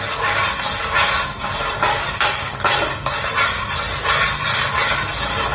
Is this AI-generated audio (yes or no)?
no